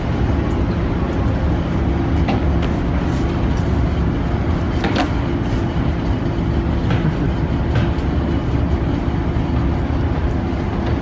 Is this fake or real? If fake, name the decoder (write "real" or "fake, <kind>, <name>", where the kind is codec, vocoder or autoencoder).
real